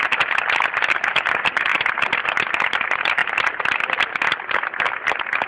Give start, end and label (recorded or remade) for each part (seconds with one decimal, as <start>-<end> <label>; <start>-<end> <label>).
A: 0.0-1.7 recorded; 1.7-2.3 remade; 2.3-3.2 recorded; 3.2-5.1 remade; 5.1-5.5 recorded